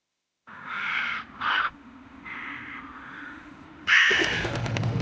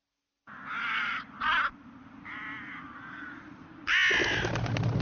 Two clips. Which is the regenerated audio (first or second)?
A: first